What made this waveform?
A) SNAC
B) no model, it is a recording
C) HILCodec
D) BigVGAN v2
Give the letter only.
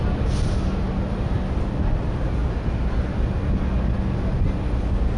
B